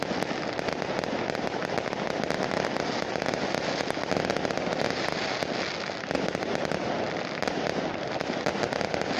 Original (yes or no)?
yes